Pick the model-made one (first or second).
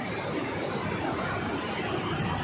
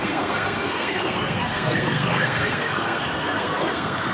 second